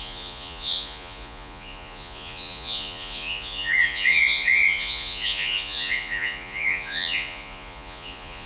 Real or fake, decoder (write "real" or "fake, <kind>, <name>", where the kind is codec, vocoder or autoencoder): fake, vocoder, Vocos